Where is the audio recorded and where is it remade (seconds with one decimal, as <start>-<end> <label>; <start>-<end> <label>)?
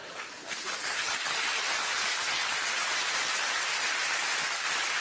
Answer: 0.0-1.6 remade; 1.6-2.8 recorded; 2.8-4.3 remade; 4.3-5.0 recorded